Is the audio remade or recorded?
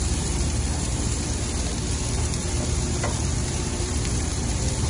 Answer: remade